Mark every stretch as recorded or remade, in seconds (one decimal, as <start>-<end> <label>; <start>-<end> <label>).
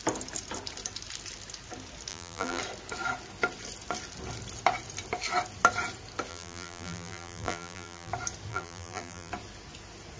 0.0-2.1 recorded; 2.1-2.6 remade; 2.6-6.3 recorded; 6.3-8.1 remade; 8.1-8.5 recorded; 8.5-9.3 remade; 9.3-10.2 recorded